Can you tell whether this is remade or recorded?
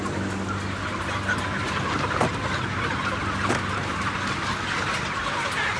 recorded